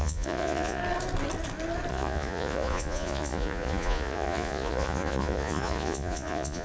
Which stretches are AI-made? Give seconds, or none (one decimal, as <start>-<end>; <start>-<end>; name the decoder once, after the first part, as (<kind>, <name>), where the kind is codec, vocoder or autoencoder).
0.0-0.8 (vocoder, Vocos); 1.9-6.6